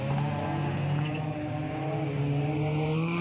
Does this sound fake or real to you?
real